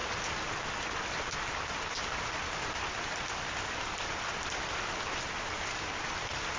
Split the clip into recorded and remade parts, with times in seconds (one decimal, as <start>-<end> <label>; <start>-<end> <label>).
0.0-6.6 recorded